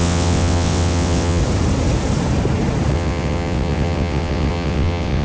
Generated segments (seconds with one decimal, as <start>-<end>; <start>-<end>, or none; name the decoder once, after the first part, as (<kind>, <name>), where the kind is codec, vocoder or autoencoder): 0.0-1.4 (vocoder, WaveNeXt); 2.9-5.2